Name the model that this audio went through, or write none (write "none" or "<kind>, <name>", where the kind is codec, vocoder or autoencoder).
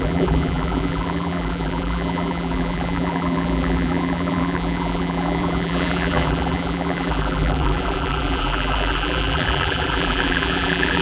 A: vocoder, BigVGAN v2